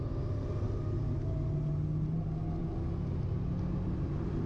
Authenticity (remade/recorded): recorded